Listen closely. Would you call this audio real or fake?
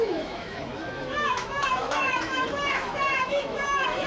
fake